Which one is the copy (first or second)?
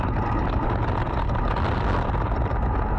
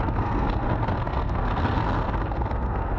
second